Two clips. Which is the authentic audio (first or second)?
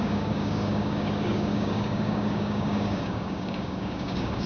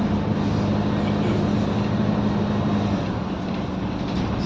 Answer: second